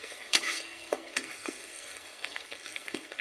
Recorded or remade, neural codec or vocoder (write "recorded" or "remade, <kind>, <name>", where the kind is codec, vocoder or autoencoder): remade, codec, SNAC